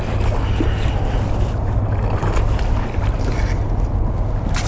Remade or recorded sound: recorded